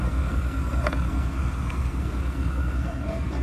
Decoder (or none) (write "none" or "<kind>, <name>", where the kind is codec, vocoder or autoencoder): codec, SNAC